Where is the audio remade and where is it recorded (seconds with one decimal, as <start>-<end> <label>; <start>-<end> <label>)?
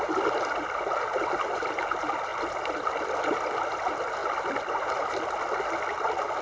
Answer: 0.0-6.4 recorded